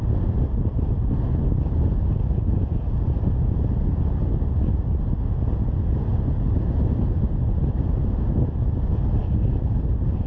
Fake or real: real